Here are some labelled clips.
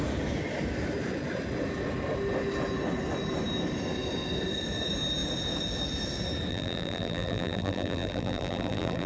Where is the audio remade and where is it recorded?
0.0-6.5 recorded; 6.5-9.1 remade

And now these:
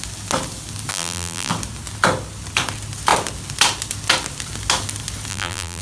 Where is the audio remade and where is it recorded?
0.0-0.9 recorded; 0.9-1.5 remade; 1.5-5.3 recorded; 5.3-5.8 remade

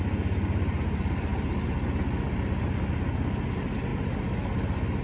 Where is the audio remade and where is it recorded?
0.0-5.0 recorded

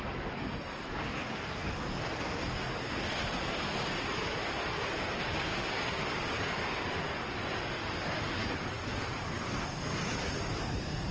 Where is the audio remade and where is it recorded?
0.0-1.6 remade; 1.6-2.9 recorded; 2.9-11.1 remade